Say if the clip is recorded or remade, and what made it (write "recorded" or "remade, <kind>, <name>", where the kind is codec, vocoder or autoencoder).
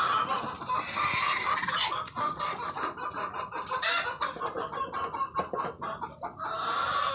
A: recorded